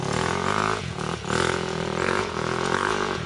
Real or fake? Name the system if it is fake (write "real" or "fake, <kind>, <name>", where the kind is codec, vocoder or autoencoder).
fake, vocoder, Vocos